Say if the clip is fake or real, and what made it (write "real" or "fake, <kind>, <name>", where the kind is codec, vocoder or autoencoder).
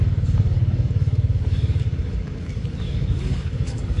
fake, codec, DAC